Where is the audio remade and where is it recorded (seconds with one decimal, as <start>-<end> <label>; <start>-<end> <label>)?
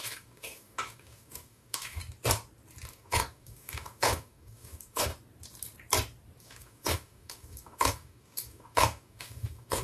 0.0-2.0 remade; 2.0-2.9 recorded; 2.9-5.1 remade; 5.1-6.4 recorded; 6.4-9.8 remade